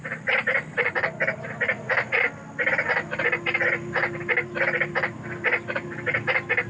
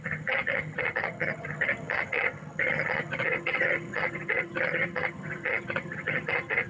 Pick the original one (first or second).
first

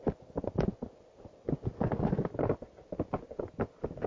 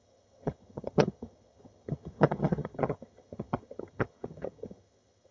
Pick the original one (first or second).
first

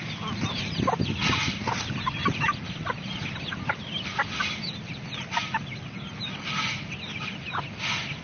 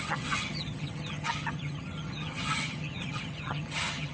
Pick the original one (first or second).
first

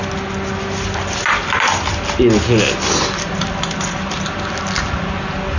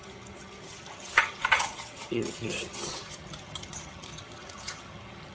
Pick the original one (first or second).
first